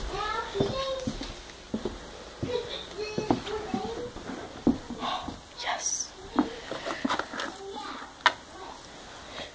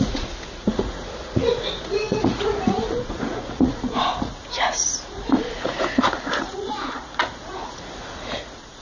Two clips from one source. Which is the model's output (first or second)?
second